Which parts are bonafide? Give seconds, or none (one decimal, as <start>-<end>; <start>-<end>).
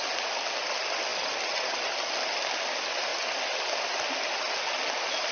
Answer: 0.0-5.3